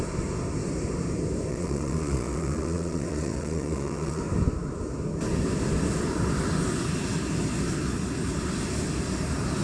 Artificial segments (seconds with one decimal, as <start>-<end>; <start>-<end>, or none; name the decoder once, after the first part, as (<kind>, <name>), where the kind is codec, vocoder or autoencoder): 1.5-4.2 (vocoder, Vocos)